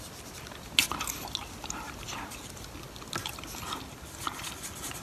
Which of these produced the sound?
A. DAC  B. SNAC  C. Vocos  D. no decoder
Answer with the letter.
D